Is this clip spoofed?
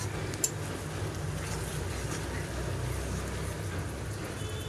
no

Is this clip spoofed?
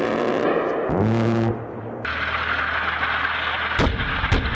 no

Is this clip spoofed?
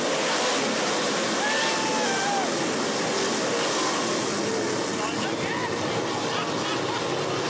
no